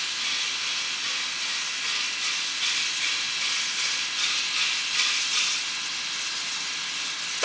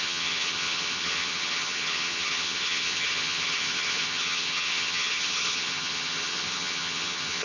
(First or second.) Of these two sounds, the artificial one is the second